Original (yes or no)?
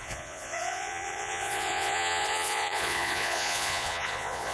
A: no